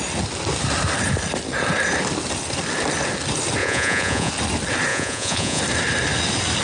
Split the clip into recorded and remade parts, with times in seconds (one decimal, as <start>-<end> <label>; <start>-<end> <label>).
0.0-3.6 recorded; 3.6-4.3 remade; 4.3-4.9 recorded; 4.9-5.6 remade; 5.6-6.6 recorded